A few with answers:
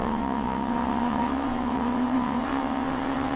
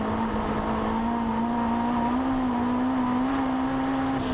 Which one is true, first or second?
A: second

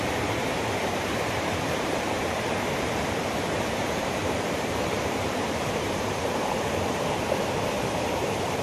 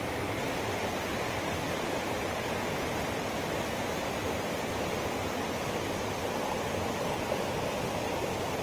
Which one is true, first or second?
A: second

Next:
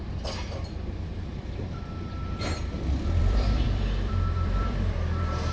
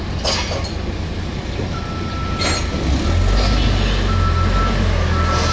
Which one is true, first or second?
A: second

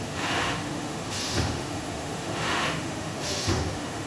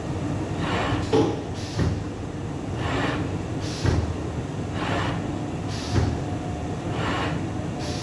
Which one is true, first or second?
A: second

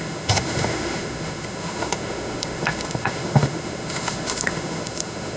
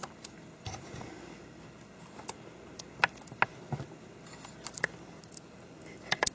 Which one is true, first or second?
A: second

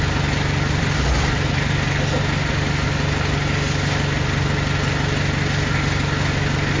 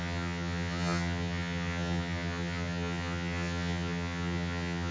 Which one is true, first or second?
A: first